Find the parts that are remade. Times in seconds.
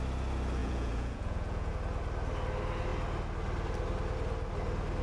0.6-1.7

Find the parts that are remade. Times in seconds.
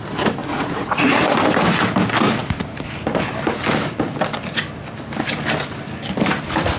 0.4-1.2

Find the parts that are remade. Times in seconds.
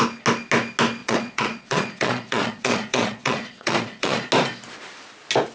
1.0-4.3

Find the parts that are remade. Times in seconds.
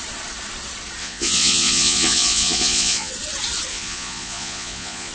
1.0-3.1; 3.7-5.1